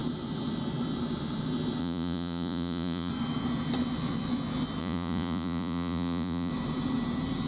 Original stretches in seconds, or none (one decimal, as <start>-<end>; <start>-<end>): 0.0-1.8; 3.1-4.8; 6.5-7.5